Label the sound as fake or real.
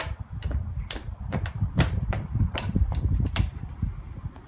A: fake